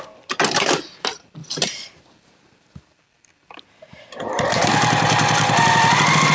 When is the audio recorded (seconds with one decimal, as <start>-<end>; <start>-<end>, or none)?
1.4-3.9